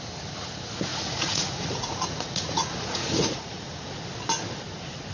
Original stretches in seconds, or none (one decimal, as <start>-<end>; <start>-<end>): 0.0-0.9; 4.0-5.1